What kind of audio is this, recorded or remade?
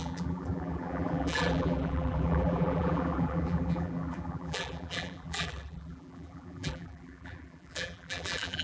remade